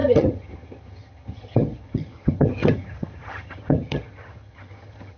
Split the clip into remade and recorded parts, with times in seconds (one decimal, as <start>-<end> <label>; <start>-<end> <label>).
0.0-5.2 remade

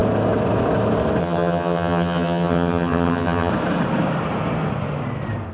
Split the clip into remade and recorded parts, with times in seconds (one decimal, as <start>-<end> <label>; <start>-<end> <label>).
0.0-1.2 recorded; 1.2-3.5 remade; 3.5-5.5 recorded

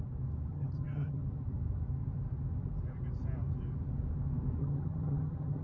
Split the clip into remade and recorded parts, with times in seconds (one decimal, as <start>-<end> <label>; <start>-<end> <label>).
0.0-0.5 recorded; 0.5-1.2 remade; 1.2-4.6 recorded; 4.6-5.6 remade

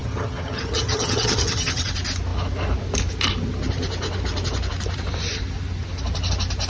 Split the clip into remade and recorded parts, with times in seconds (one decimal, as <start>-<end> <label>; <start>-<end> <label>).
0.0-1.9 remade; 1.9-6.7 recorded